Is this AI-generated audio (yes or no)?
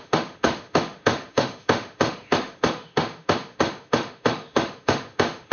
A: yes